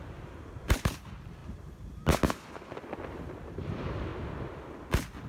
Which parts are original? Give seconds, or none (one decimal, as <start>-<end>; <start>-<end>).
1.4-3.5; 4.1-5.3